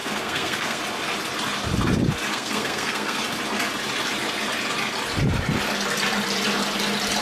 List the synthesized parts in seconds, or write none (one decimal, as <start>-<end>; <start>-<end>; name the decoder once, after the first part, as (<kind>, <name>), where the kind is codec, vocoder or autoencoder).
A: 0.0-0.8 (codec, SNAC); 2.3-3.2